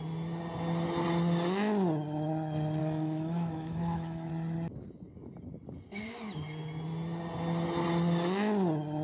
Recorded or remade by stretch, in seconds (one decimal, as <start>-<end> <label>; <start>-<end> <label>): 0.0-2.8 recorded; 2.8-4.3 remade; 4.3-9.0 recorded